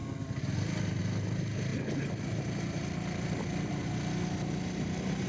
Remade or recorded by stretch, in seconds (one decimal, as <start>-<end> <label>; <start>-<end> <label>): 0.0-5.3 recorded